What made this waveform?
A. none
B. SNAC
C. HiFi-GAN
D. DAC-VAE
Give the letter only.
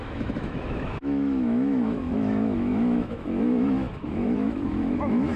D